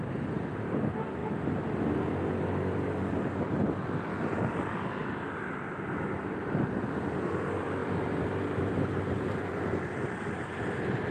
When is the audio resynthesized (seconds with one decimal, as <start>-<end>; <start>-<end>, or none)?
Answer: none